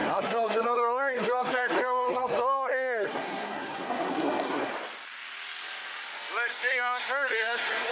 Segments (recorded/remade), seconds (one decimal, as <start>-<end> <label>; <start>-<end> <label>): 0.0-4.7 remade; 4.7-6.5 recorded; 6.5-7.9 remade